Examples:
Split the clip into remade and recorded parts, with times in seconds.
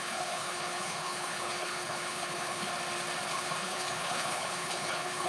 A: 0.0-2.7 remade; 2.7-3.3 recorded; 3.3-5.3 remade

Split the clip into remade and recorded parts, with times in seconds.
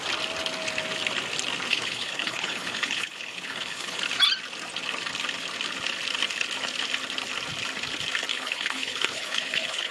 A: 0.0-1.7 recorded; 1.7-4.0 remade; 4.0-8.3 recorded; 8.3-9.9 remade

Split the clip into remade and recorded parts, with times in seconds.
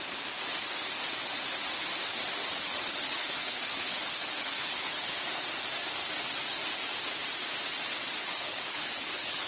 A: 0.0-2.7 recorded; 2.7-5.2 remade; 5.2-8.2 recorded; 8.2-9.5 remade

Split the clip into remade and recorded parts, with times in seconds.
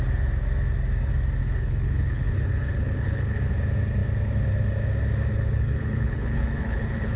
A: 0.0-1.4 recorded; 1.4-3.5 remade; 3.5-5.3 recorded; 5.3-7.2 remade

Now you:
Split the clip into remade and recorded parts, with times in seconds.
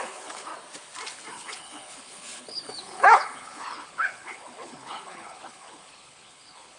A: 0.0-0.5 remade; 0.5-1.3 recorded; 1.3-6.8 remade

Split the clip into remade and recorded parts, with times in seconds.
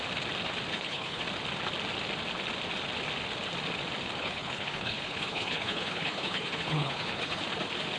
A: 0.0-0.7 recorded; 0.7-1.2 remade; 1.2-4.2 recorded; 4.2-7.4 remade; 7.4-8.0 recorded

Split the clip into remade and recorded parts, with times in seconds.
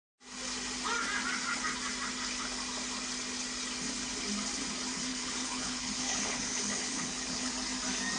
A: 0.0-5.1 recorded; 5.1-7.5 remade; 7.5-8.2 recorded